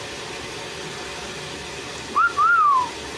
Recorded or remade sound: recorded